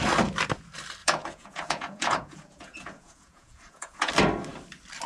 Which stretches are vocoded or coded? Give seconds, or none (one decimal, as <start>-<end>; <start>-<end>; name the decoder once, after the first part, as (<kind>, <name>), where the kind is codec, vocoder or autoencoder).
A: 1.0-4.1 (vocoder, Vocos)